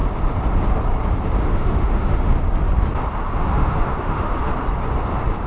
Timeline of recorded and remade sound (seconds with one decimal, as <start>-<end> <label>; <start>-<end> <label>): 0.0-1.4 recorded; 1.4-2.3 remade; 2.3-3.5 recorded; 3.5-4.5 remade; 4.5-5.5 recorded